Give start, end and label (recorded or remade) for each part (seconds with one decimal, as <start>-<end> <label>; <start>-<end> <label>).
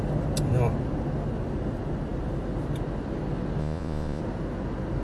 0.0-3.6 recorded; 3.6-4.2 remade; 4.2-5.0 recorded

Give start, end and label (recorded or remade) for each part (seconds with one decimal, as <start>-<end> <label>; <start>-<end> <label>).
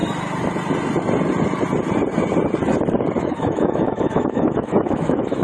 0.0-3.2 recorded; 3.2-5.4 remade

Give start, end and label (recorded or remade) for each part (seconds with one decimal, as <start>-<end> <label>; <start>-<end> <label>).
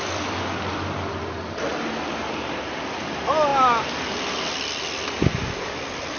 0.0-6.2 recorded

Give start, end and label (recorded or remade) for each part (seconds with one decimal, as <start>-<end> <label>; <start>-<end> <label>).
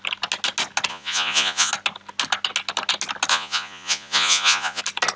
0.0-0.9 recorded; 0.9-1.7 remade; 1.7-3.3 recorded; 3.3-4.8 remade; 4.8-5.2 recorded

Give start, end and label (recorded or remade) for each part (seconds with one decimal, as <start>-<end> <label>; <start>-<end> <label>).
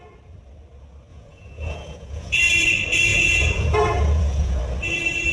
0.0-1.1 recorded; 1.1-2.4 remade; 2.4-3.1 recorded; 3.1-4.6 remade; 4.6-5.3 recorded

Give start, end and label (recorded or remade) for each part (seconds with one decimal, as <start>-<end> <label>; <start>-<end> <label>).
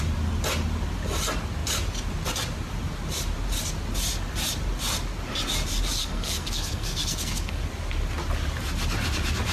0.0-6.0 recorded; 6.0-7.6 remade; 7.6-9.5 recorded